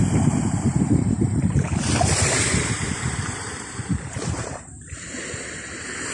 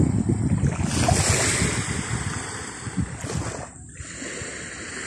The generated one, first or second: first